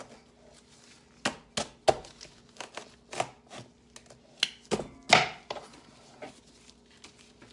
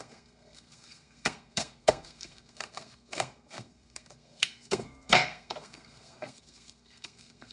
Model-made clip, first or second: second